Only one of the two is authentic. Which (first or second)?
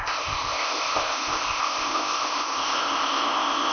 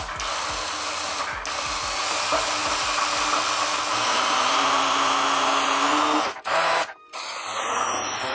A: second